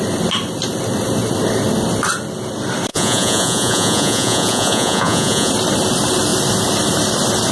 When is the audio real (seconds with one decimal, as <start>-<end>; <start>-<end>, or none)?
0.0-2.9; 5.5-7.5